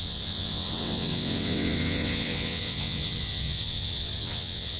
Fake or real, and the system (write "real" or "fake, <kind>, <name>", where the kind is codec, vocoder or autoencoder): fake, vocoder, WaveNeXt